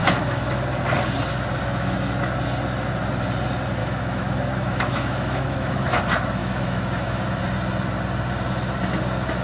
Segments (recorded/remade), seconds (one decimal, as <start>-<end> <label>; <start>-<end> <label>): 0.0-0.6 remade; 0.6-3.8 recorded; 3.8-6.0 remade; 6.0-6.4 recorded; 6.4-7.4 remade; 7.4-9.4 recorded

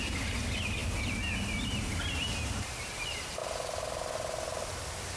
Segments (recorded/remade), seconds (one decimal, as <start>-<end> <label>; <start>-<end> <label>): 0.0-5.2 recorded

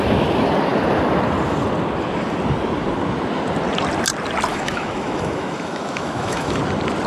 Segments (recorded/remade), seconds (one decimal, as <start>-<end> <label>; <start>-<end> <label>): 0.0-4.5 recorded; 4.5-6.6 remade; 6.6-7.1 recorded

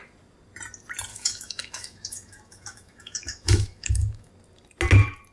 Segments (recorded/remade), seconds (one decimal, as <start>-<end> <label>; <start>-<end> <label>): 0.0-1.1 recorded; 1.1-4.3 remade; 4.3-5.3 recorded